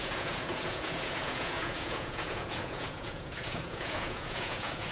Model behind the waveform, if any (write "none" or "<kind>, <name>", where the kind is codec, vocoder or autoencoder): vocoder, Vocos